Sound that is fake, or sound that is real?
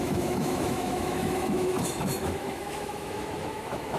fake